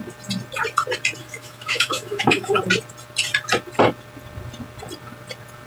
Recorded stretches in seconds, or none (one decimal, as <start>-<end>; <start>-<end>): 0.0-1.2; 2.6-5.7

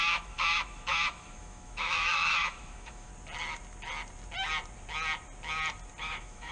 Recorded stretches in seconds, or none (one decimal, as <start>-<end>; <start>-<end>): 3.1-6.0

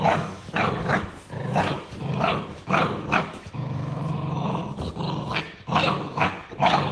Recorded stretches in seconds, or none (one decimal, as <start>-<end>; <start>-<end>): 4.6-5.4

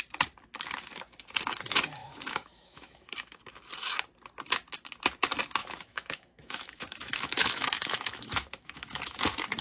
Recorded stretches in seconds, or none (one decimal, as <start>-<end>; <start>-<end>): 0.0-2.0; 3.4-5.6; 9.2-9.6

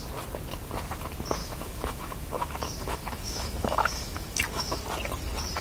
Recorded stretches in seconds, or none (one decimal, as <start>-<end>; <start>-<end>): 0.0-1.4; 4.8-5.6

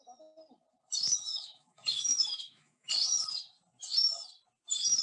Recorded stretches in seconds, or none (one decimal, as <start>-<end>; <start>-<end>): 0.0-1.3; 2.9-5.0

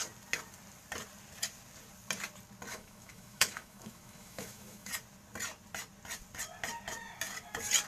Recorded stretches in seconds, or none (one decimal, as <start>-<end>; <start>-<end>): 0.0-2.7; 4.9-7.9

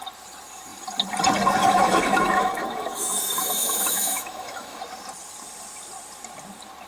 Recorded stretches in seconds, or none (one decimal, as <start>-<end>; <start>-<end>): 0.0-1.6; 4.8-6.9